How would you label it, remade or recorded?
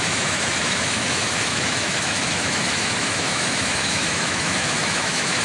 remade